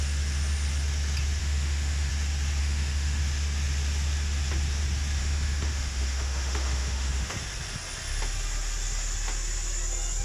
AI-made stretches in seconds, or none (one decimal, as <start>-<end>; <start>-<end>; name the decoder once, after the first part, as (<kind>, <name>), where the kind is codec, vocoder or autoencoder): 1.4-2.1 (autoencoder, DAC-VAE); 2.6-3.2; 5.2-7.4